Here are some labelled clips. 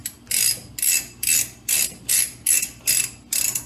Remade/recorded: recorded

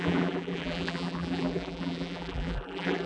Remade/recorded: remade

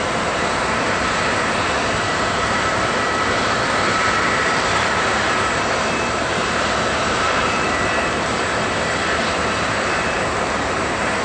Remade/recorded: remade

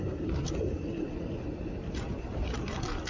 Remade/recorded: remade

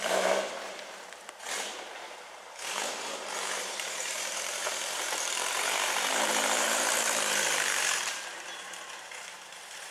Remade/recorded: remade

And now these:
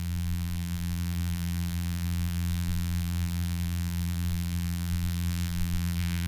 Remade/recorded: remade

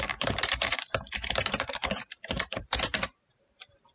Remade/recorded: remade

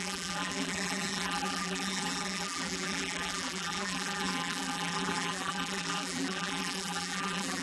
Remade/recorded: remade